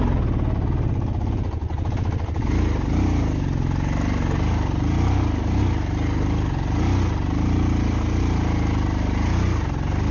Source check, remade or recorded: recorded